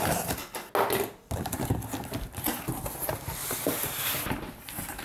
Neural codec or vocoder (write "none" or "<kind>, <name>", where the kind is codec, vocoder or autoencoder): none